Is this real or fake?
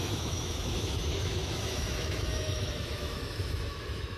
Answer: fake